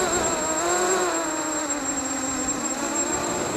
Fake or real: fake